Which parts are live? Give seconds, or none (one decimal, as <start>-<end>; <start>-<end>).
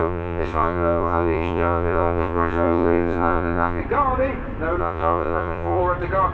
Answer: 3.8-4.8; 5.8-6.3